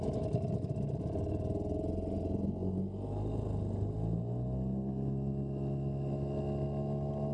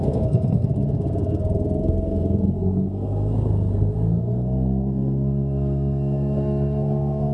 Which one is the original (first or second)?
first